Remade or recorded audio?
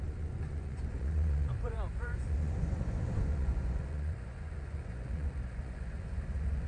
remade